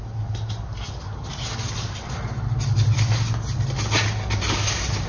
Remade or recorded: recorded